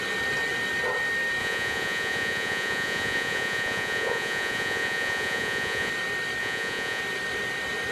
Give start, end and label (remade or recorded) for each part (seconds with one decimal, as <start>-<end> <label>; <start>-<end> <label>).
0.0-1.4 recorded; 1.4-5.9 remade; 5.9-6.4 recorded; 6.4-7.0 remade; 7.0-7.9 recorded